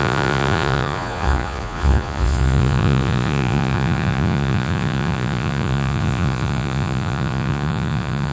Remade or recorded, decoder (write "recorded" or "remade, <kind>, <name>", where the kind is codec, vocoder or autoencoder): remade, vocoder, Vocos